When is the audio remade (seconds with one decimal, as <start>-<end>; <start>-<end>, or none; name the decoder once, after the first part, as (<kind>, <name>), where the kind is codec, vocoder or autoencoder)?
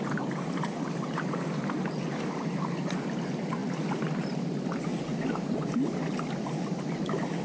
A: none